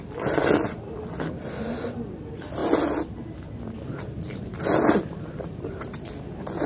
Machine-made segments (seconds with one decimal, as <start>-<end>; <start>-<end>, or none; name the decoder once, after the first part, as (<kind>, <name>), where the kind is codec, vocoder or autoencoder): none